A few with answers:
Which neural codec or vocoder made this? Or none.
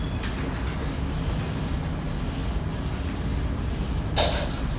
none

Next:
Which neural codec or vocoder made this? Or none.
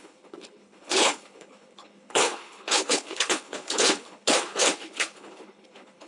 codec, HILCodec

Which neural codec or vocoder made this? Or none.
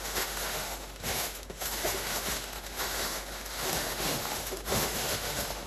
autoencoder, DAC-VAE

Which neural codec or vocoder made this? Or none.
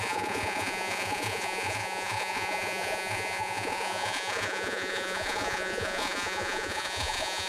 vocoder, Vocos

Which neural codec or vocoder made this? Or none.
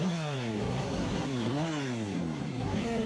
codec, SNAC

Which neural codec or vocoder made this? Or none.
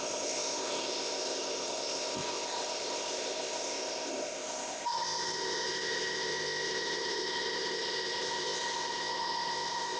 codec, ZipCodec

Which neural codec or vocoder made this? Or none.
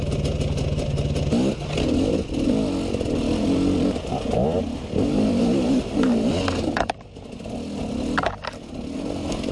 none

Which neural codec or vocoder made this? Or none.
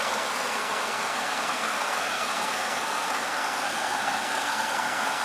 codec, SNAC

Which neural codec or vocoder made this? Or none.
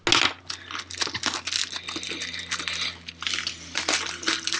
none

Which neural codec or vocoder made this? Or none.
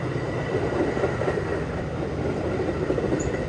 vocoder, BigVGAN v2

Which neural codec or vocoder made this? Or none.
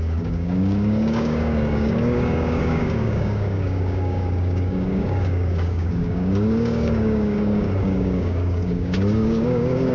codec, DAC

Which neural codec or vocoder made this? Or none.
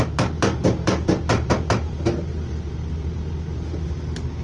none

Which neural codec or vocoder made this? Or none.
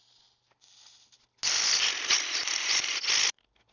none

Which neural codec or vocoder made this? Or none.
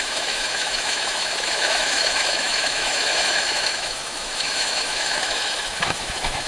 autoencoder, DAC-VAE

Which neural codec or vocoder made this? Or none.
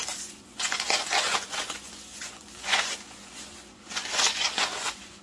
vocoder, Vocos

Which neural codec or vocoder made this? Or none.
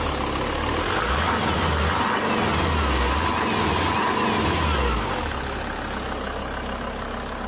none